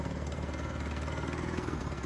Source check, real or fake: fake